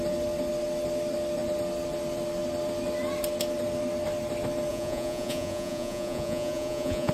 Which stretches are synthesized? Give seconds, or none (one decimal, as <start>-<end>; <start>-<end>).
4.7-7.1